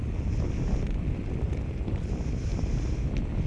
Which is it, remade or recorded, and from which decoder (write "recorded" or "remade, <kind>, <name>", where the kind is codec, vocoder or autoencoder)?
recorded